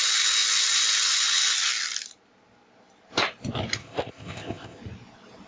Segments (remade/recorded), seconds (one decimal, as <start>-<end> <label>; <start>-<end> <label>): 0.0-3.8 recorded; 3.8-4.8 remade; 4.8-5.5 recorded